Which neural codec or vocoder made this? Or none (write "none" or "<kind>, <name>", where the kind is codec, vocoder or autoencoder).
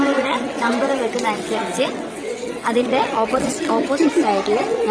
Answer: vocoder, WaveNeXt